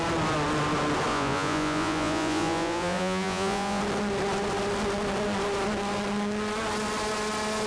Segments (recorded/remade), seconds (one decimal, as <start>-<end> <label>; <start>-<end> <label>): 0.0-1.1 recorded; 1.1-3.8 remade; 3.8-7.7 recorded